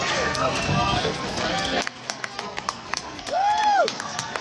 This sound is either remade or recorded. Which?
remade